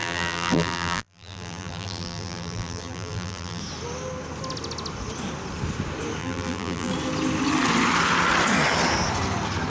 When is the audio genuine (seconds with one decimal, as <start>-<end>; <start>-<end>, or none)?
3.6-6.2; 6.9-9.7